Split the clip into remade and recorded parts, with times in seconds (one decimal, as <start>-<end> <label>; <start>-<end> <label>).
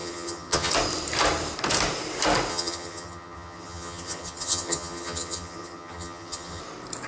0.0-0.7 remade; 0.7-2.5 recorded; 2.5-6.6 remade; 6.6-7.1 recorded